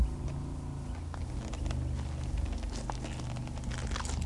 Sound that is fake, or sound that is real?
real